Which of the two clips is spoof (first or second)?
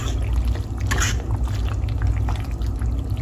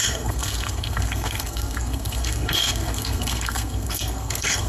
second